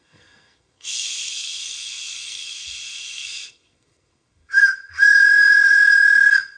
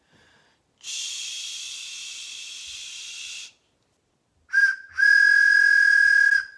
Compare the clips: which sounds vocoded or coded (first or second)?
first